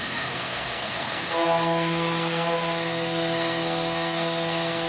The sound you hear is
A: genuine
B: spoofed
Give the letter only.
B